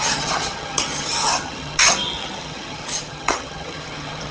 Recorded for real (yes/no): no